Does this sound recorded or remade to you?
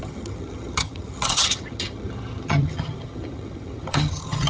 remade